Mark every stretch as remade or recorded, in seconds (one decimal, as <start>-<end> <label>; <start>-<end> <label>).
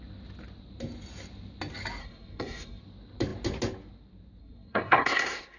0.0-2.0 recorded; 2.0-2.8 remade; 2.8-4.4 recorded; 4.4-5.6 remade